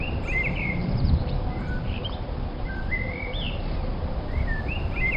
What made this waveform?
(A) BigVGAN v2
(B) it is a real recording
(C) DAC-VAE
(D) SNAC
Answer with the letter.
A